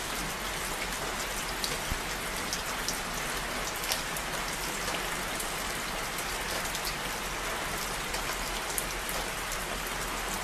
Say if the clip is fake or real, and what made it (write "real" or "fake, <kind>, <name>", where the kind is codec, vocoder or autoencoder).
real